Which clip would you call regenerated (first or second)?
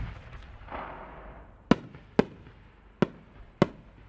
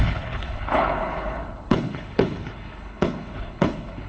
second